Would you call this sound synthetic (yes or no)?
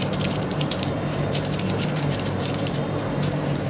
yes